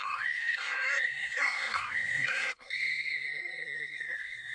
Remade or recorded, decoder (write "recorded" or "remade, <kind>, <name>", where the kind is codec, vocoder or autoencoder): remade, codec, SNAC